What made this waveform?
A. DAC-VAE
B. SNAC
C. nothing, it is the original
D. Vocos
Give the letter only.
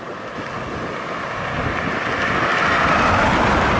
C